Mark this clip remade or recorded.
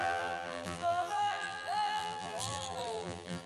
remade